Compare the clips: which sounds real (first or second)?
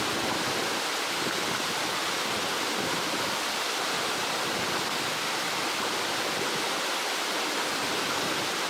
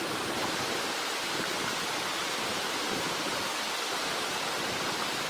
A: first